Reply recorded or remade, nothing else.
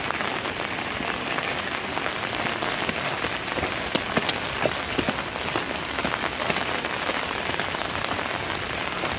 recorded